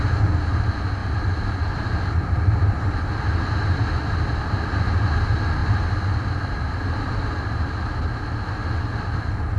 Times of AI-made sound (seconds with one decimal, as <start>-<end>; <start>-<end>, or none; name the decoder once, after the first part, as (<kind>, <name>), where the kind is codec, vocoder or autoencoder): none